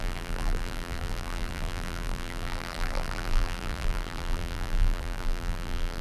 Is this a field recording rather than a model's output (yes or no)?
no